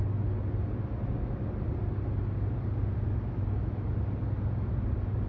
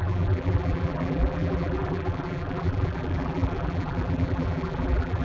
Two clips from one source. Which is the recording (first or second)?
first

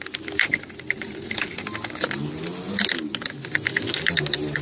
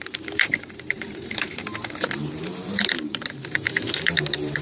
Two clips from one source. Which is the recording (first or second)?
first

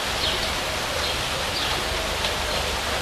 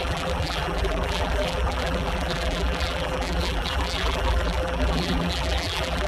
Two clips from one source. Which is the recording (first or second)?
first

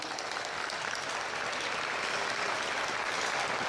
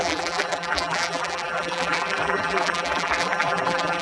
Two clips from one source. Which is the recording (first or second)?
first